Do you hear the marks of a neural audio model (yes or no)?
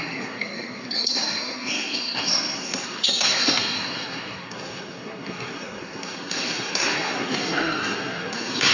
yes